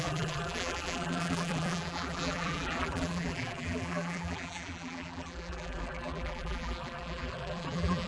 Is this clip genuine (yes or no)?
no